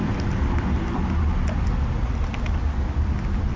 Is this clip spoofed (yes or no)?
no